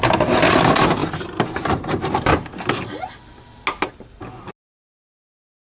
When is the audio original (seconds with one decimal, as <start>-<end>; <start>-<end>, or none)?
0.0-5.8